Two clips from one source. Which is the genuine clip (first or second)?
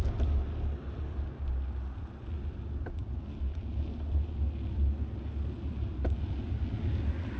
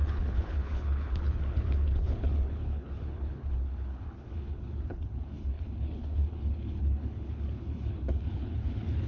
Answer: first